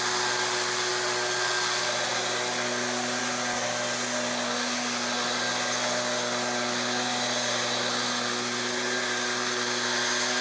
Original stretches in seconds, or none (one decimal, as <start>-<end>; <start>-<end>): 0.0-10.4